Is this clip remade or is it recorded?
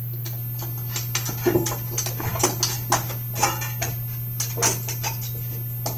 recorded